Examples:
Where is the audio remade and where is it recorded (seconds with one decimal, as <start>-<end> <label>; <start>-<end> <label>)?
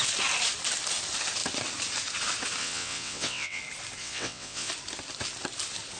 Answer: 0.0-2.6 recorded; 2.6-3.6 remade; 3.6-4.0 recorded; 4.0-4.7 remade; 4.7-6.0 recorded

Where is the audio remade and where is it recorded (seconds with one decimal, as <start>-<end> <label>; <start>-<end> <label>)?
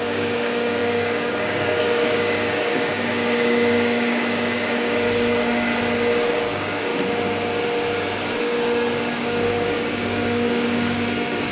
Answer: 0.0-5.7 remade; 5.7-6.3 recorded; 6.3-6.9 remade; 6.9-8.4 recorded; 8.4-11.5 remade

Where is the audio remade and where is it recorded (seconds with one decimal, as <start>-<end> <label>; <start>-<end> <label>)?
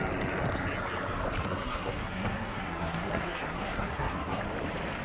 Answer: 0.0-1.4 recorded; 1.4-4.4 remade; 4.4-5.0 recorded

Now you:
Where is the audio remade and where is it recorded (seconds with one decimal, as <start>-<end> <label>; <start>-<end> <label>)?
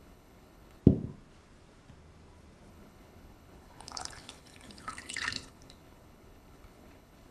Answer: 0.0-0.8 remade; 0.8-2.7 recorded; 2.7-7.3 remade